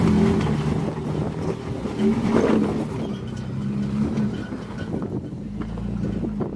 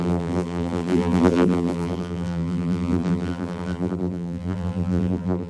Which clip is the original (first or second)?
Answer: first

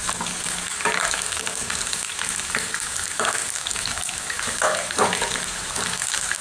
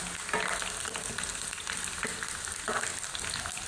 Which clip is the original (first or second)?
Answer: second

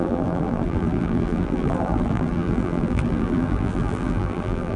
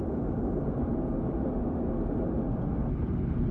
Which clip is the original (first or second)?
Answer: second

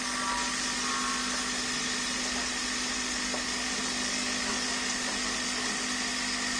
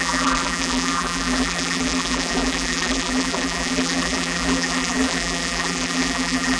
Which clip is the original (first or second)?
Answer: first